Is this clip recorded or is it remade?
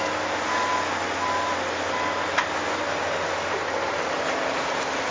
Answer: recorded